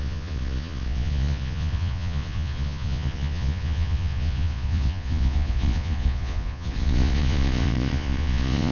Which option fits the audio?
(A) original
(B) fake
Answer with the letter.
B